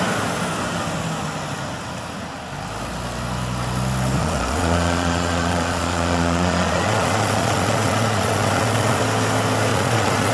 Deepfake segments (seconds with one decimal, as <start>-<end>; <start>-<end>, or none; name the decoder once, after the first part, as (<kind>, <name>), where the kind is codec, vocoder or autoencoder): 4.2-9.0 (vocoder, Vocos); 9.7-10.3